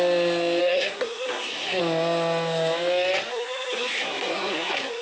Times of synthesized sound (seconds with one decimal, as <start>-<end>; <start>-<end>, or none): 0.6-1.8; 3.3-5.0